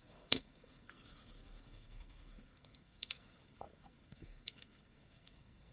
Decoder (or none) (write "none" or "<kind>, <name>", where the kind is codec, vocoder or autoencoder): codec, SNAC